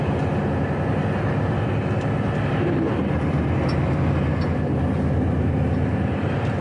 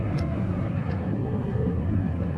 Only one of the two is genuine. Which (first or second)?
first